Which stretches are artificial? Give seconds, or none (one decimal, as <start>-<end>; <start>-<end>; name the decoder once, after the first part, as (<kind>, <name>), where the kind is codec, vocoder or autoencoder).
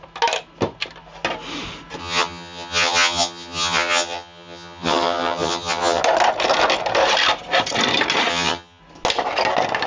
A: 2.0-6.0 (vocoder, HiFi-GAN); 8.3-8.8